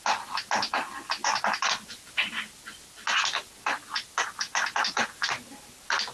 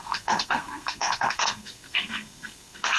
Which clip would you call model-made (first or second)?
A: second